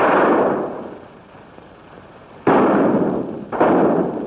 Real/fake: real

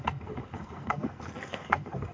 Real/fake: fake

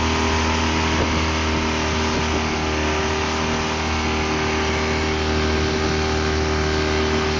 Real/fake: real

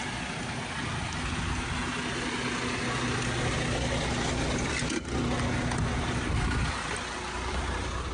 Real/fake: real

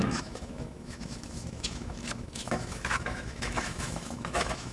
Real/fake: fake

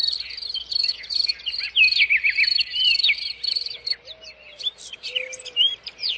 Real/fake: fake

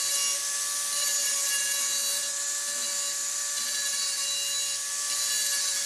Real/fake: real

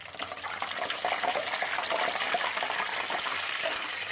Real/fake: real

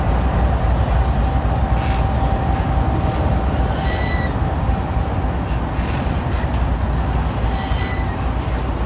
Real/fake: real